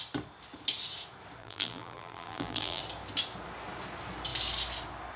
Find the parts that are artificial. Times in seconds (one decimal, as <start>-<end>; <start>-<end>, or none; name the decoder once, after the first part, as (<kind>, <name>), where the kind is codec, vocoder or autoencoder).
1.4-2.8 (vocoder, BigVGAN v2)